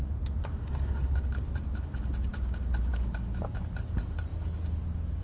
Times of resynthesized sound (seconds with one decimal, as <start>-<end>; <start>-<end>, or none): none